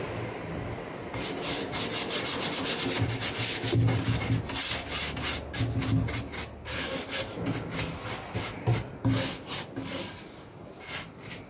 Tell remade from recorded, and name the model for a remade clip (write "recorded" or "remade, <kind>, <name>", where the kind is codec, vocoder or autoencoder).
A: recorded